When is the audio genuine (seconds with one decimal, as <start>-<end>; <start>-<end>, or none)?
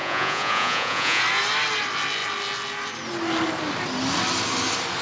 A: 1.2-5.0